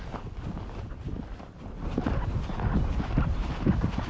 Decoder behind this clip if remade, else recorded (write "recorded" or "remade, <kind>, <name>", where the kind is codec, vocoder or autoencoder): recorded